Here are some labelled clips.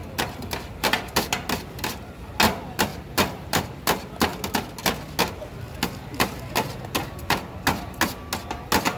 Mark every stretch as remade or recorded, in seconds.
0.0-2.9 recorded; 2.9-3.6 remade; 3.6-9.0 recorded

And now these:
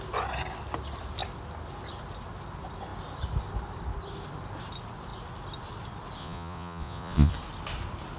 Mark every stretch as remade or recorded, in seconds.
0.0-6.2 recorded; 6.2-7.3 remade; 7.3-8.2 recorded

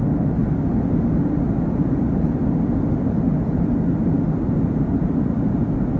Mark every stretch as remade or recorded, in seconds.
0.0-6.0 recorded

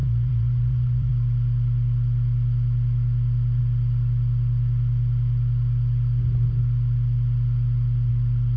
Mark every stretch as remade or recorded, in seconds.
0.0-1.1 remade; 1.1-8.6 recorded

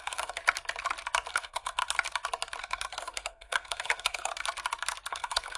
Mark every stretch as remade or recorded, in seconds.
0.0-0.4 remade; 0.4-1.3 recorded; 1.3-1.8 remade; 1.8-2.6 recorded; 2.6-4.3 remade; 4.3-5.1 recorded; 5.1-5.6 remade

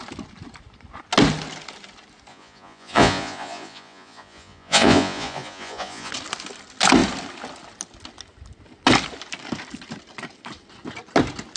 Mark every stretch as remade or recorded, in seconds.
0.0-2.3 recorded; 2.3-6.1 remade; 6.1-11.6 recorded

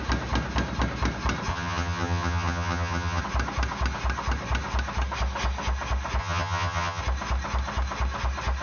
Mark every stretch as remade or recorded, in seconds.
0.0-1.5 recorded; 1.5-3.2 remade; 3.2-6.2 recorded; 6.2-7.0 remade; 7.0-8.6 recorded

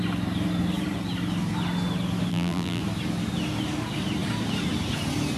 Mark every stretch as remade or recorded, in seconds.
0.0-2.3 recorded; 2.3-2.8 remade; 2.8-5.4 recorded